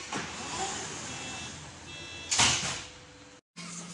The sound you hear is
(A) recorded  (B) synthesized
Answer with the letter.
A